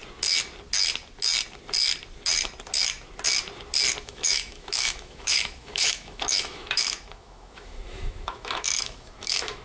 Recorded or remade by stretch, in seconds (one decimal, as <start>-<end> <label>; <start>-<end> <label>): 0.0-4.0 recorded; 4.0-9.6 remade